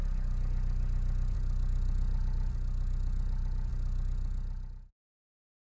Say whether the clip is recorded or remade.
recorded